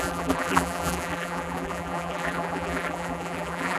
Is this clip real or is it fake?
fake